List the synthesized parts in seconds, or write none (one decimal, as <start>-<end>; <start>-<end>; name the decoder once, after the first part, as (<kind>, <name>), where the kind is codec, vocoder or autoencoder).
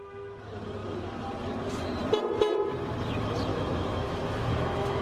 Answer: 3.5-5.0 (autoencoder, DAC-VAE)